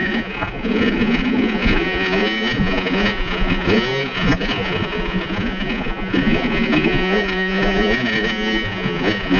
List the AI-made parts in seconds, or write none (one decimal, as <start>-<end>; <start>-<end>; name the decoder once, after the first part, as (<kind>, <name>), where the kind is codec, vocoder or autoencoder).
0.0-9.4 (vocoder, Vocos)

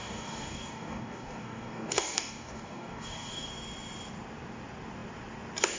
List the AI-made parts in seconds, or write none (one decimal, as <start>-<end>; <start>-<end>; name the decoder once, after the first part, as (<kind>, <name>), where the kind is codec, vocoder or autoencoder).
0.0-3.5 (codec, DAC)